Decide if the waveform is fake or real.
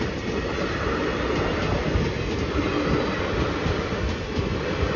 real